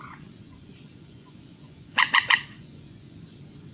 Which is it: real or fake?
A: fake